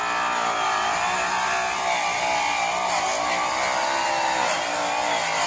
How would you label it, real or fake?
real